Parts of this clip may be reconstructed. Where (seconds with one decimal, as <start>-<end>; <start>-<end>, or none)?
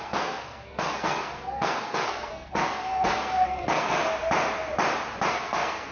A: 0.0-4.0; 5.3-5.9